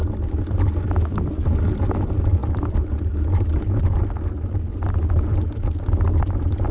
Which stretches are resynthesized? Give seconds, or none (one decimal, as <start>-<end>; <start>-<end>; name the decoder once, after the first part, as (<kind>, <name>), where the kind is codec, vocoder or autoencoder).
none